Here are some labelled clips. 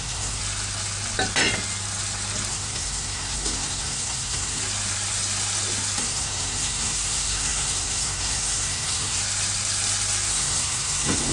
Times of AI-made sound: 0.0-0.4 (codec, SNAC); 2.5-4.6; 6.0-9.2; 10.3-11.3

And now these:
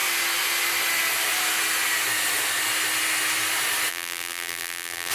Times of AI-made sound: 3.9-5.1 (vocoder, BigVGAN v2)

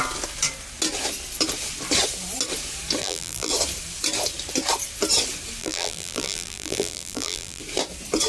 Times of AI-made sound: 3.0-3.5 (vocoder, BigVGAN v2); 5.6-7.6

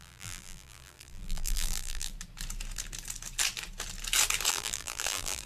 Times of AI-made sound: 0.0-2.1 (vocoder, BigVGAN v2); 4.5-5.5